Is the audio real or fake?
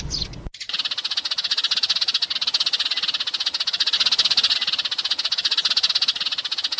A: real